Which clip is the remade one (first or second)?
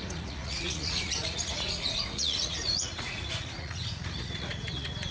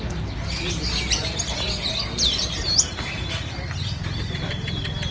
first